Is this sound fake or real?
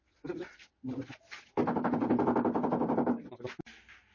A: real